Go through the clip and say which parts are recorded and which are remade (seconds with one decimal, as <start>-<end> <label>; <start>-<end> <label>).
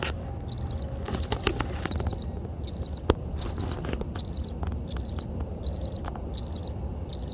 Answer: 0.0-7.3 recorded